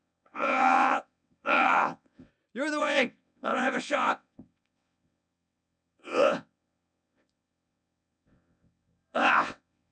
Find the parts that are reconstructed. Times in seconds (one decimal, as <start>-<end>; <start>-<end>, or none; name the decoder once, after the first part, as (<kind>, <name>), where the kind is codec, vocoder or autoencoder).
0.0-2.3 (vocoder, WaveNeXt); 2.8-9.9